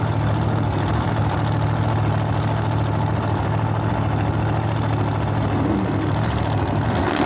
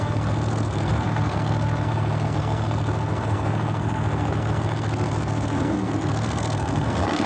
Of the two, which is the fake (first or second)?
second